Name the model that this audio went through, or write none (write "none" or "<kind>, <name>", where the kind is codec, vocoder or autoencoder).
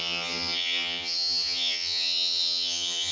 vocoder, HiFi-GAN